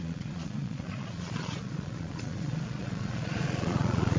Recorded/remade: remade